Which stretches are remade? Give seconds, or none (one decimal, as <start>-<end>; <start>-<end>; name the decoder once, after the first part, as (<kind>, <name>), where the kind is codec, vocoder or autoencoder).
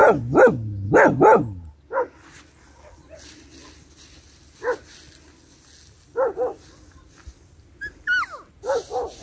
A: none